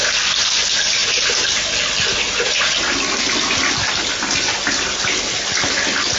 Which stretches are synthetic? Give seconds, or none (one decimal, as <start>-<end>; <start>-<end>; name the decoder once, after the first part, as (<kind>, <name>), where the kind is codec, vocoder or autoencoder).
none